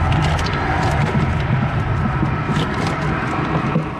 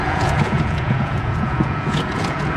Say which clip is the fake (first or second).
second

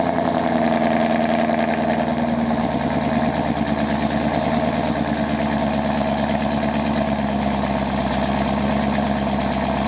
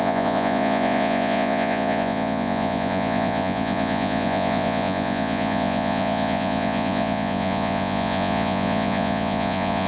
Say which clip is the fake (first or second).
second